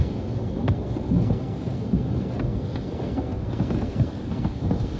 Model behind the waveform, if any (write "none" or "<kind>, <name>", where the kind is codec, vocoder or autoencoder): codec, SNAC